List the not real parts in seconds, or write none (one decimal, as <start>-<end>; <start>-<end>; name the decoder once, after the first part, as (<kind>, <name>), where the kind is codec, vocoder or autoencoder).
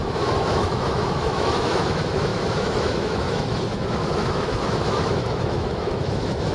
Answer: 0.0-6.5 (autoencoder, DAC-VAE)